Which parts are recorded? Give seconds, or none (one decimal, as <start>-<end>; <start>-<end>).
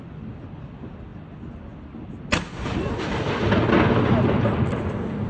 0.0-5.3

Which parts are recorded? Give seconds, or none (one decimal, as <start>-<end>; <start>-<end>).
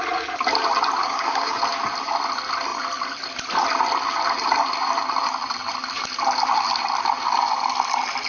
0.0-1.0; 1.6-8.3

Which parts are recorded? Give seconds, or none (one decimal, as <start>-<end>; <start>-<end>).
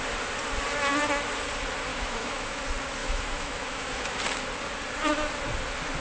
0.0-1.9; 2.6-3.0; 4.2-6.0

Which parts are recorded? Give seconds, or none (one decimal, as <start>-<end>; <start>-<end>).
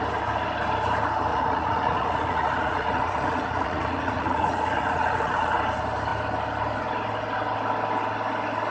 0.0-1.3; 5.5-8.7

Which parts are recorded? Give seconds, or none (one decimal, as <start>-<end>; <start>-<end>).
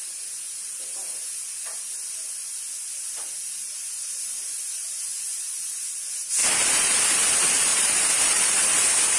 0.0-6.4; 7.0-7.7; 8.5-9.2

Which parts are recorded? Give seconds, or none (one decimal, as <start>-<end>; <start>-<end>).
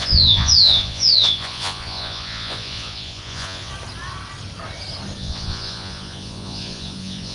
3.7-5.2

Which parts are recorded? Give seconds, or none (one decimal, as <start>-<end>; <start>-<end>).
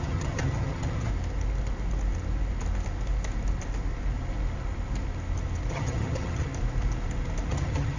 1.1-5.7; 6.5-7.5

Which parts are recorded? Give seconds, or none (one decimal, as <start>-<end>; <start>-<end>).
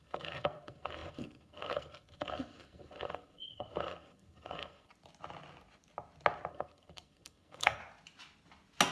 4.9-6.5; 7.8-8.9